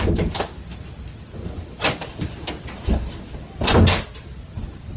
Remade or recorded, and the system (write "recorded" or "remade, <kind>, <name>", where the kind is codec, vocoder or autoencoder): recorded